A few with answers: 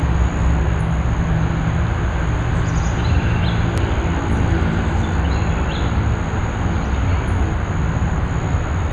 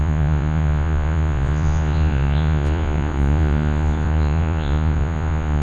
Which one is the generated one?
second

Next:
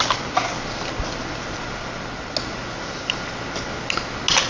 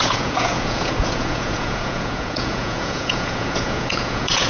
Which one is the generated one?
second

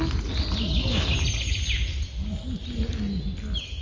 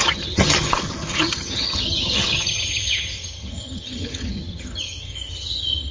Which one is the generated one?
second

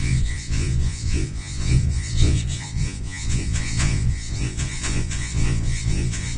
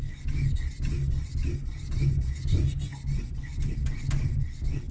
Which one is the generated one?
first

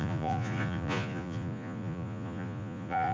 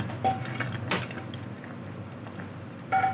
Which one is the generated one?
first